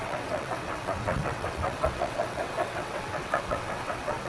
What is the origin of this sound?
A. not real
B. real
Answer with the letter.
A